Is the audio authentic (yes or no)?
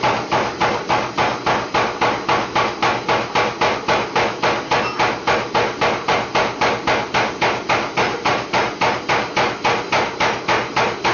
yes